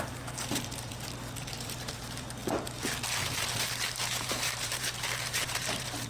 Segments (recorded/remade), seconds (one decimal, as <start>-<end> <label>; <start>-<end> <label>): 0.0-0.9 remade; 0.9-1.4 recorded; 1.4-2.4 remade; 2.4-3.6 recorded; 3.6-6.1 remade